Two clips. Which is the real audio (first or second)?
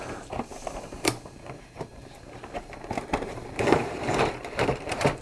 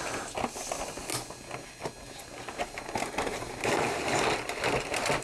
second